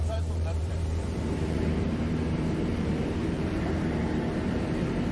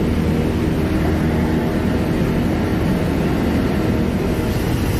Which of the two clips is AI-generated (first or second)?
first